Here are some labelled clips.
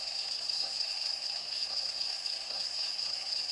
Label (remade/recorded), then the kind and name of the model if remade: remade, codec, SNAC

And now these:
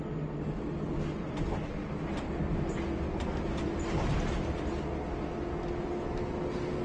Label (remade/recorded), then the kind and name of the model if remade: recorded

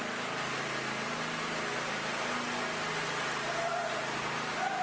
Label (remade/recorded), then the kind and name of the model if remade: recorded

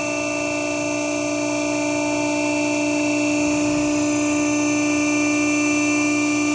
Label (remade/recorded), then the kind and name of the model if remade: recorded